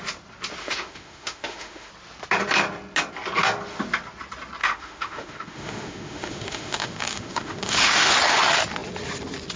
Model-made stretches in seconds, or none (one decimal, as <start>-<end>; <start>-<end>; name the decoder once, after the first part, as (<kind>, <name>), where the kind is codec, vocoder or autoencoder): 0.6-1.9 (autoencoder, DAC-VAE); 4.6-8.1